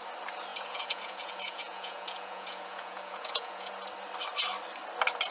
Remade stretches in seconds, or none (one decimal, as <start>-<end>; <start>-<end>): 0.5-3.7